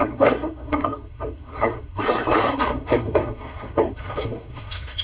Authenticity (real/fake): fake